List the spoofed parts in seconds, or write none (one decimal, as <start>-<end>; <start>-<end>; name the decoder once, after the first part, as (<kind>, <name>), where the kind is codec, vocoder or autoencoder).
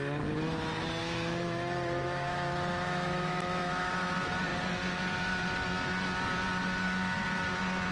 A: 1.0-4.1 (autoencoder, DAC-VAE)